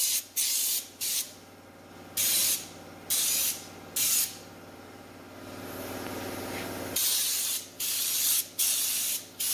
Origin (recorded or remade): recorded